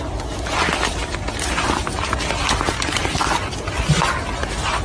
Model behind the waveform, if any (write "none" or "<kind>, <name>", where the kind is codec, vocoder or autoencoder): none